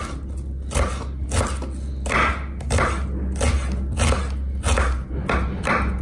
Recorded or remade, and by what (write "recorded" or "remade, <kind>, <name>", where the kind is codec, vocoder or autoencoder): recorded